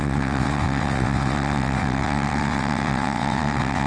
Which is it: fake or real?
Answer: fake